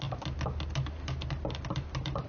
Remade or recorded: recorded